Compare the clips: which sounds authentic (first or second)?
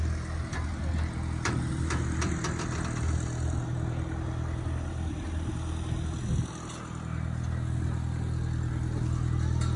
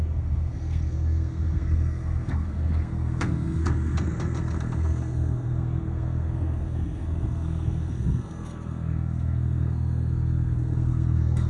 first